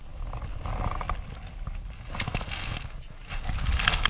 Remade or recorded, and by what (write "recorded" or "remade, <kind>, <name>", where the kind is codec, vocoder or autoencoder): recorded